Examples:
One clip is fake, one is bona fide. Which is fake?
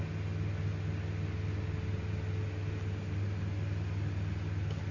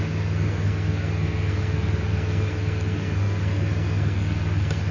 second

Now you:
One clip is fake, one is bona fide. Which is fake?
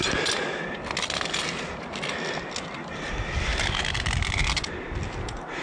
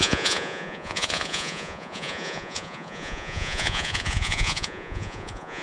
second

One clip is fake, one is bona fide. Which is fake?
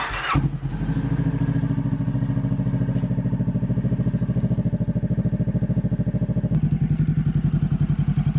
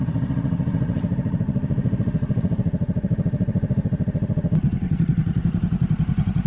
second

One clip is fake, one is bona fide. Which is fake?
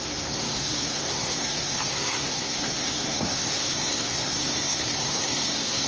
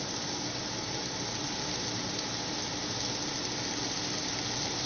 first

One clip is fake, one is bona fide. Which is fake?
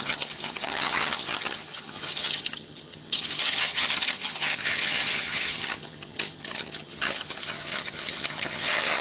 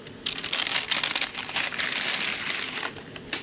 first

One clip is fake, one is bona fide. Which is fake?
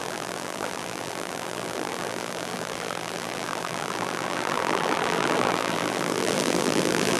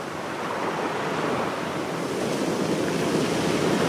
first